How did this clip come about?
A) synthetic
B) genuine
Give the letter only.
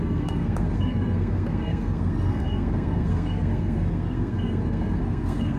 A